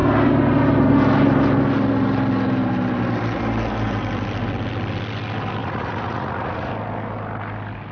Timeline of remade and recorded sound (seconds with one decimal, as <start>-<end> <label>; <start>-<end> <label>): 0.0-5.6 recorded; 5.6-6.7 remade; 6.7-7.9 recorded